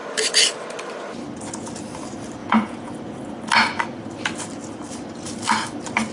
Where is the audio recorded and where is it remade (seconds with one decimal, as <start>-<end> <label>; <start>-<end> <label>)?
0.0-2.4 recorded; 2.4-2.9 remade; 2.9-6.1 recorded

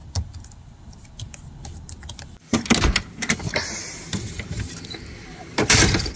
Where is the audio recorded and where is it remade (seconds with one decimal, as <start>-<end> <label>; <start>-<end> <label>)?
0.0-6.2 recorded

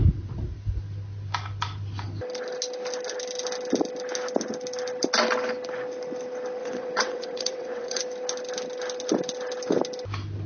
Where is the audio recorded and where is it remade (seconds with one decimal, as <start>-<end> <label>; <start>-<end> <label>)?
0.0-6.6 recorded; 6.6-8.0 remade; 8.0-10.5 recorded

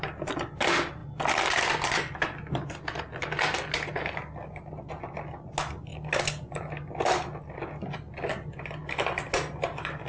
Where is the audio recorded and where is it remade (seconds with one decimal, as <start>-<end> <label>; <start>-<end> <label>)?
0.0-10.1 recorded

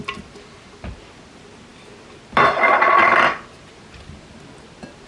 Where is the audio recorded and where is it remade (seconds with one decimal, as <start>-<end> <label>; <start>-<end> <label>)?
0.0-5.1 recorded

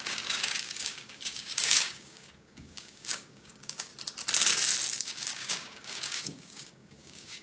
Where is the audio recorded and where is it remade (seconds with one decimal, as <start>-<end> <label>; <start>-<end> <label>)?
0.0-3.9 remade; 3.9-4.9 recorded; 4.9-7.4 remade

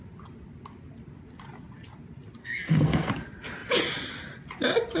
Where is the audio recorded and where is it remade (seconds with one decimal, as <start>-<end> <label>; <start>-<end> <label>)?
0.0-2.4 recorded; 2.4-3.1 remade; 3.1-5.0 recorded

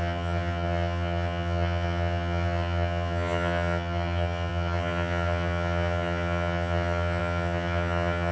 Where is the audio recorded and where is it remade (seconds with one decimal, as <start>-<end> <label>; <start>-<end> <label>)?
0.0-8.3 remade